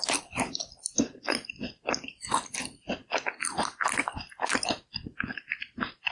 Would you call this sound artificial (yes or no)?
no